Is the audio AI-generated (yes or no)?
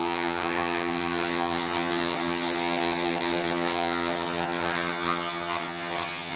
yes